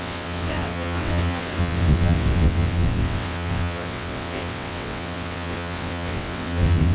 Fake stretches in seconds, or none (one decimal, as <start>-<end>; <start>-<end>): 0.0-6.9